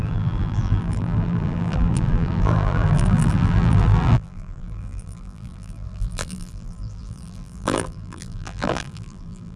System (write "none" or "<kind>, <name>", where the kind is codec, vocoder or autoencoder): vocoder, BigVGAN v2